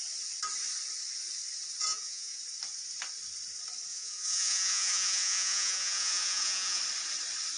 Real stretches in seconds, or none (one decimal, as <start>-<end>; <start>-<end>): 0.0-1.9; 2.4-3.9; 6.8-7.6